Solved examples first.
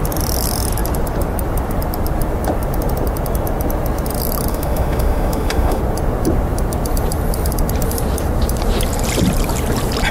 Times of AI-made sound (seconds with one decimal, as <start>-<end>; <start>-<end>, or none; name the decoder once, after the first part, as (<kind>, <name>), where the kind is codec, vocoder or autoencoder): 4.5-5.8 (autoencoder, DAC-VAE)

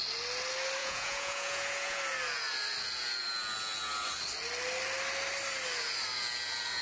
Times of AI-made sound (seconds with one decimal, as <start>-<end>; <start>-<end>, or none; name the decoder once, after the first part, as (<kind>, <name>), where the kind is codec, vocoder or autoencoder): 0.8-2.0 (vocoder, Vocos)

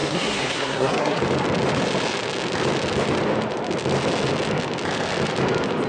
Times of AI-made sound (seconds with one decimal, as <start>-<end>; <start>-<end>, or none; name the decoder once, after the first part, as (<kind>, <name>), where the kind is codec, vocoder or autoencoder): 0.0-1.2 (codec, SNAC)